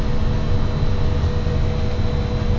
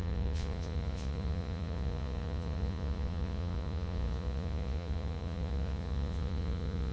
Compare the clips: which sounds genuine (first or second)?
first